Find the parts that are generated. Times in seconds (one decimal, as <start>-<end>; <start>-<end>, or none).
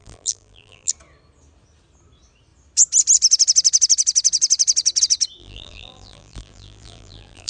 0.0-0.9; 5.4-7.5